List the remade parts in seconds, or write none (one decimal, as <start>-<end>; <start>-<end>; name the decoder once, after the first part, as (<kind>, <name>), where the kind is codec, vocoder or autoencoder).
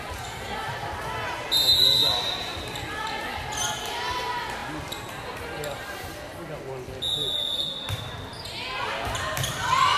none